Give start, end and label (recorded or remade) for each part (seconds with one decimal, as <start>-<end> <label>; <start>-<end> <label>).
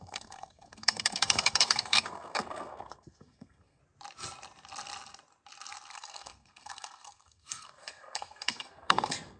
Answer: 0.0-3.8 remade; 3.8-5.9 recorded; 5.9-9.4 remade